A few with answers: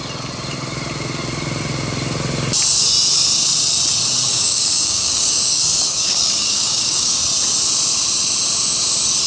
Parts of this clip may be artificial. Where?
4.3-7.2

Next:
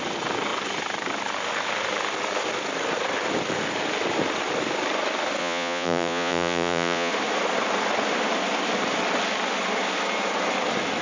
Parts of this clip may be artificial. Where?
5.4-7.1

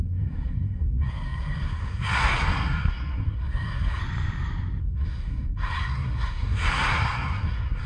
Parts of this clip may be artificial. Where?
0.0-4.0; 4.8-7.9

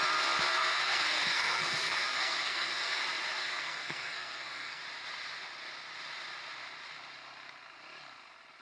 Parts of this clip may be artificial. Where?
0.5-3.0; 3.4-4.8

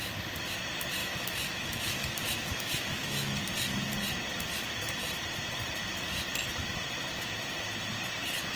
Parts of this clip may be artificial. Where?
1.0-3.4

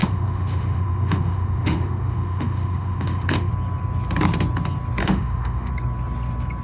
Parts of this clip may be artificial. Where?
0.0-3.5; 5.0-5.7

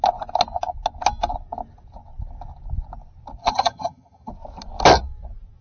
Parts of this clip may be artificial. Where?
3.4-4.3

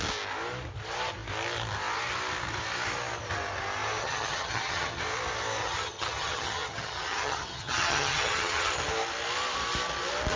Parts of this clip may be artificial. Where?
4.0-5.0; 5.6-8.7